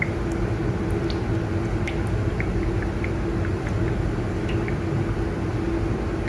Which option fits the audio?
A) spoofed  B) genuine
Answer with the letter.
B